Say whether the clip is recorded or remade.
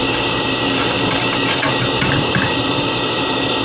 remade